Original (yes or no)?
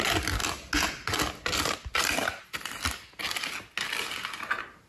yes